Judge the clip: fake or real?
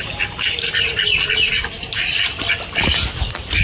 real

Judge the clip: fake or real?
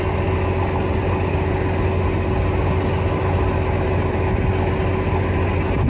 real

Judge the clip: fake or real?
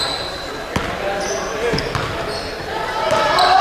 real